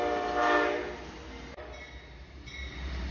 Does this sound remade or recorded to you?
recorded